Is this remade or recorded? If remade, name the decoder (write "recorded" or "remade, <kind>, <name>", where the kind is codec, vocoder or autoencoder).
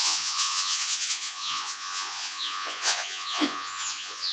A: remade, vocoder, Vocos